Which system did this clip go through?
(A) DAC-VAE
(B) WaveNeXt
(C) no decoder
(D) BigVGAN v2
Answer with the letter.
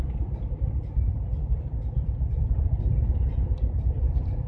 D